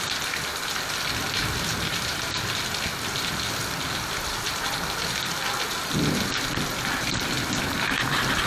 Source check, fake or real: real